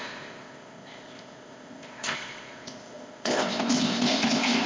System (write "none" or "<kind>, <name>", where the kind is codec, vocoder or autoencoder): codec, ZipCodec